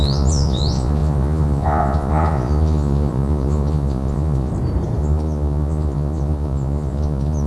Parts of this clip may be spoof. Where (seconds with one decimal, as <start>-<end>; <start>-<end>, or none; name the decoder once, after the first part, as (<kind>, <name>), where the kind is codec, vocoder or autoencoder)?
0.0-4.5 (vocoder, Vocos); 5.0-7.5